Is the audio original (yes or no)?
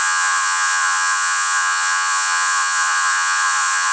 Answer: no